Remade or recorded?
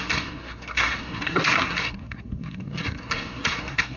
remade